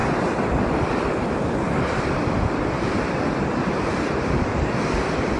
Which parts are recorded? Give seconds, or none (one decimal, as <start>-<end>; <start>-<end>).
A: 0.0-5.4